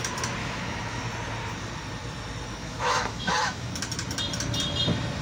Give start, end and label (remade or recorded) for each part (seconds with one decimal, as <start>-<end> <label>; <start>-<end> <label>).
0.0-0.4 recorded; 0.4-1.0 remade; 1.0-2.6 recorded; 2.6-3.7 remade; 3.7-5.2 recorded